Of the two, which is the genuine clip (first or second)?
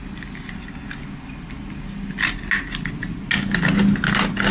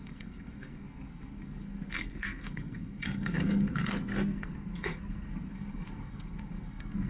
first